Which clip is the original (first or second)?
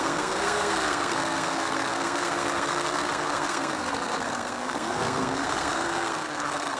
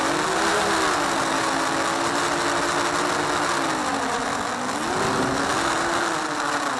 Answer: second